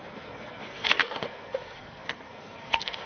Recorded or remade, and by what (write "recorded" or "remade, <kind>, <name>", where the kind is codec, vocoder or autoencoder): remade, codec, SNAC